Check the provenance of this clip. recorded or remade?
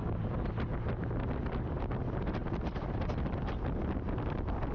recorded